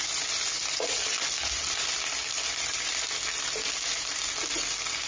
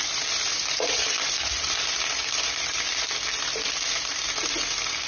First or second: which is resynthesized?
second